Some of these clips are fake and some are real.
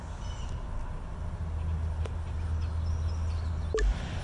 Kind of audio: real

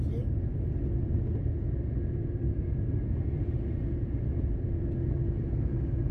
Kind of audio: real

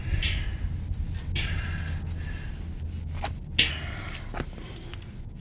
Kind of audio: real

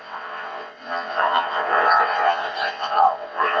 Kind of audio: fake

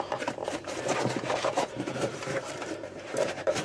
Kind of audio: fake